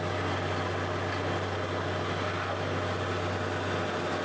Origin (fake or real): real